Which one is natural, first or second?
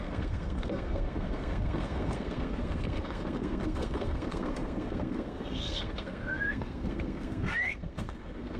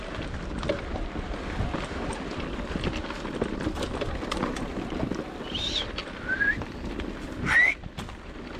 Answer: second